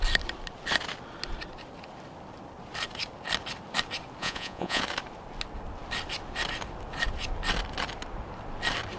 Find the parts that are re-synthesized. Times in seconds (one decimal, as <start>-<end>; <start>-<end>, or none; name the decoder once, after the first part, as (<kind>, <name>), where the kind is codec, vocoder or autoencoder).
4.2-4.8 (vocoder, Vocos)